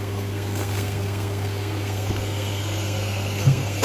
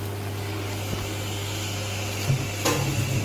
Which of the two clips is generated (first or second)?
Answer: first